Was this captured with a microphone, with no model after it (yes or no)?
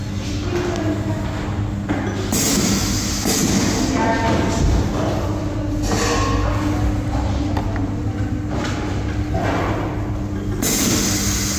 yes